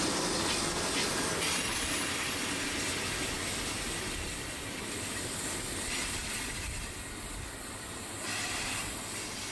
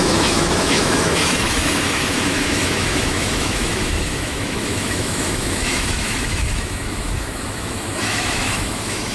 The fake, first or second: second